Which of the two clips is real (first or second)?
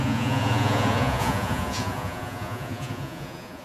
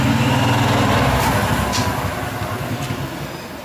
second